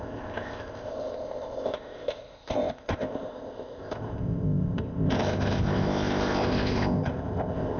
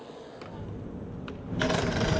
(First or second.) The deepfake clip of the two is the first